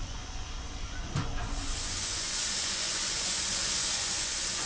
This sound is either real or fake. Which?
fake